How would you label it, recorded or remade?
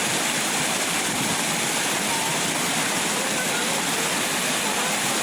remade